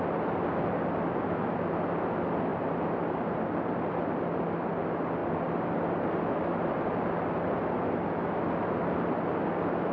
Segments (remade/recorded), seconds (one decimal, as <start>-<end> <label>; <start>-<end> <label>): 0.0-2.5 recorded; 2.5-3.9 remade; 3.9-9.9 recorded